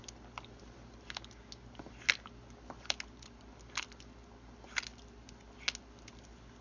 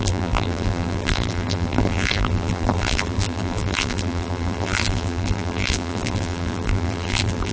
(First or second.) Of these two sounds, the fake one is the second